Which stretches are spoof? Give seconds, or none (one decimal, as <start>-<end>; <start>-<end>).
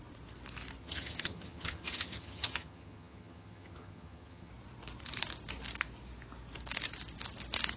0.8-4.5